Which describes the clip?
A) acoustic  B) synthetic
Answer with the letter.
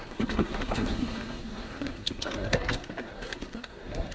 B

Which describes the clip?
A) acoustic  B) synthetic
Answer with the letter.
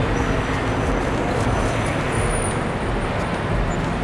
A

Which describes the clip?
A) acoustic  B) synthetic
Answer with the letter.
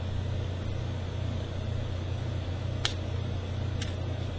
A